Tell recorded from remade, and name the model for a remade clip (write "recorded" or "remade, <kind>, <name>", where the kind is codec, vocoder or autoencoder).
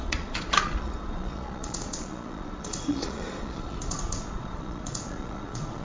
remade, vocoder, Vocos